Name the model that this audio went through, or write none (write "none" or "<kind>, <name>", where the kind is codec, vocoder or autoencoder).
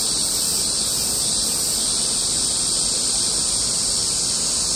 none